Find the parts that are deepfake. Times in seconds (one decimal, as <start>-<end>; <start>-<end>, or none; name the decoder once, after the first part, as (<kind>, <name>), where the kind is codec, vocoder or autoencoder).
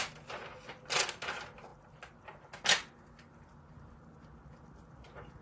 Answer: none